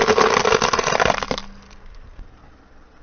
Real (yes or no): yes